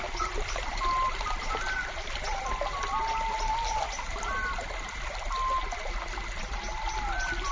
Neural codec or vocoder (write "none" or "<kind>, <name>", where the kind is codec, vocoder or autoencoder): none